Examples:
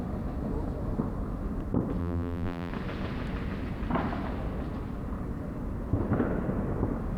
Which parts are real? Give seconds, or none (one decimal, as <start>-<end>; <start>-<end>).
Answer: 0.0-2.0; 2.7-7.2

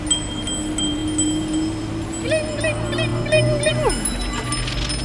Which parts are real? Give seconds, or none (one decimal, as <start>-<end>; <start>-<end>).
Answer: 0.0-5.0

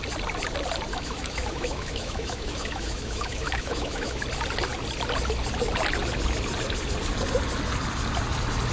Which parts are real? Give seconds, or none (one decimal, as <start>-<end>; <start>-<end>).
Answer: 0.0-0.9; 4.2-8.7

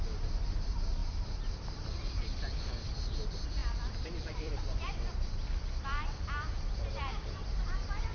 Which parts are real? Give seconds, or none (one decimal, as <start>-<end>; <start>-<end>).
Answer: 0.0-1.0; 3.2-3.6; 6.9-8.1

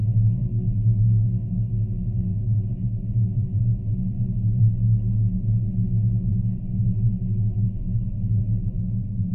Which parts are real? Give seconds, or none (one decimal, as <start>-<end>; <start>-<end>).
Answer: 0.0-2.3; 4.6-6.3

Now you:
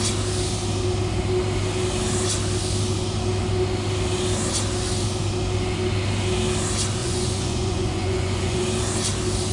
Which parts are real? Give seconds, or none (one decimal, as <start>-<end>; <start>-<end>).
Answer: 0.0-7.0; 8.6-9.5

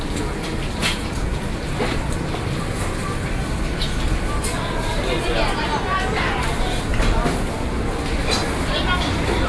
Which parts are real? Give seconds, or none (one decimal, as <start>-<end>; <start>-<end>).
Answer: 0.0-0.8; 1.4-9.5

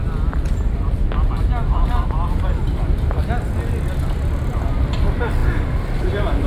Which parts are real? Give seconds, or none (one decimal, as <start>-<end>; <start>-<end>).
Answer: 0.0-6.5